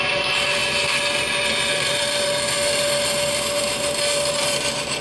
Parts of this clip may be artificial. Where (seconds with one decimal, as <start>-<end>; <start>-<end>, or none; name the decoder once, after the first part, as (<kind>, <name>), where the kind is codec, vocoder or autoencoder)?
none